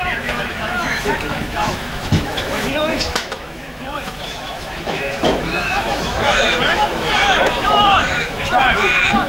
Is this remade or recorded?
remade